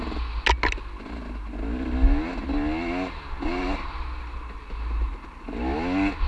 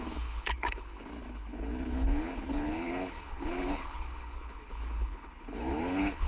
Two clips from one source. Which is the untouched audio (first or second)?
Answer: first